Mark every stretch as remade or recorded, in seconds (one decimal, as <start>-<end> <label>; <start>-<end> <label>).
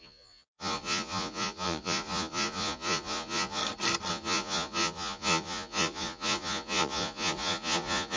0.0-3.6 remade; 3.6-4.1 recorded; 4.1-8.2 remade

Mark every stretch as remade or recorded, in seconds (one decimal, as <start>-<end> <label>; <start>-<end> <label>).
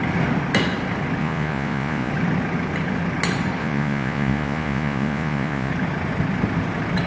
0.0-1.2 recorded; 1.2-2.1 remade; 2.1-3.6 recorded; 3.6-5.7 remade; 5.7-7.1 recorded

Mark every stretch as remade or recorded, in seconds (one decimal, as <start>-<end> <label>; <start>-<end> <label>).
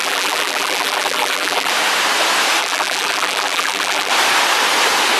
0.0-1.7 remade; 1.7-2.6 recorded; 2.6-4.1 remade; 4.1-5.2 recorded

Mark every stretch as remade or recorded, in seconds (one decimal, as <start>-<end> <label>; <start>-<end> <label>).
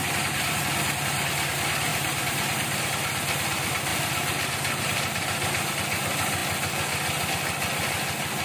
0.0-0.6 remade; 0.6-1.9 recorded; 1.9-2.9 remade; 2.9-3.9 recorded; 3.9-5.7 remade; 5.7-8.4 recorded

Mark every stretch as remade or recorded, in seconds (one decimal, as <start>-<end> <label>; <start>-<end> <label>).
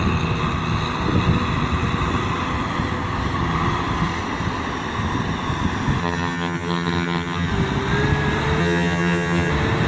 0.0-6.0 recorded; 6.0-7.5 remade; 7.5-8.6 recorded; 8.6-9.5 remade; 9.5-9.9 recorded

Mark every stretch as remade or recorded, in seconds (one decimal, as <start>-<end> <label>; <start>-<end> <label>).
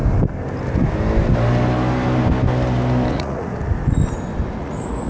0.0-3.1 recorded; 3.1-3.6 remade; 3.6-4.6 recorded; 4.6-5.1 remade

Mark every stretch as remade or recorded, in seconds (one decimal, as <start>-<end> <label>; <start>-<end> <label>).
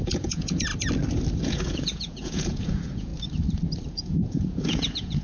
0.0-0.7 remade; 0.7-1.3 recorded; 1.3-3.1 remade; 3.1-3.9 recorded; 3.9-5.2 remade